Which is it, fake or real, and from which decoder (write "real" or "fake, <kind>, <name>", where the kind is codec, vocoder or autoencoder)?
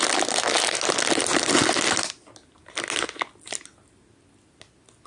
real